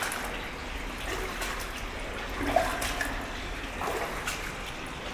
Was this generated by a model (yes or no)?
no